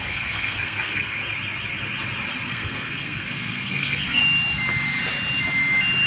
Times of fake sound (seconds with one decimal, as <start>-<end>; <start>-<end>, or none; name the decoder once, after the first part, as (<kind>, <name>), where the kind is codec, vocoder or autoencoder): 0.0-1.2 (codec, SNAC); 2.5-4.2